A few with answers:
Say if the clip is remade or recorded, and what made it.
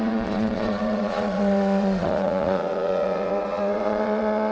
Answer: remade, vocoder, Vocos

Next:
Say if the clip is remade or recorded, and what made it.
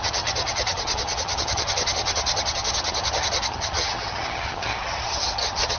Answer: remade, vocoder, HiFi-GAN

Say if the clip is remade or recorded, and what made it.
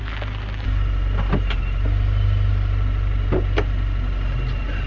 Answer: recorded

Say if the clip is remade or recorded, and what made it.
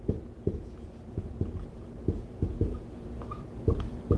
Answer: remade, vocoder, Vocos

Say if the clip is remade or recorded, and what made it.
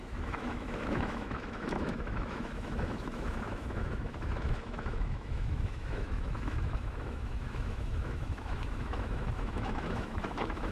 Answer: remade, autoencoder, DAC-VAE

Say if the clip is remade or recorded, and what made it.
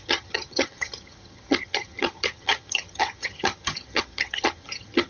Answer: remade, vocoder, HiFi-GAN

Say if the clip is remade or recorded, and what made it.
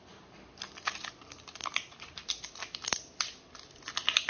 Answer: recorded